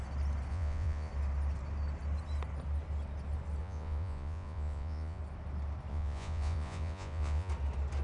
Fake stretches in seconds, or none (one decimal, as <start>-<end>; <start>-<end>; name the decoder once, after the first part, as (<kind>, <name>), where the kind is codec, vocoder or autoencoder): 0.5-1.1 (vocoder, Vocos); 3.6-5.2; 5.9-7.5